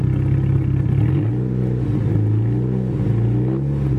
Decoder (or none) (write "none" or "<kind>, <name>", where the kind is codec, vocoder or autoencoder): none